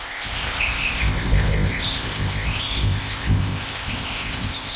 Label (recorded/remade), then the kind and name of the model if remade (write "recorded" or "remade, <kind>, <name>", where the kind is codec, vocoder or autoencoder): remade, codec, ZipCodec